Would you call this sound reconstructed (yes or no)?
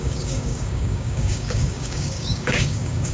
yes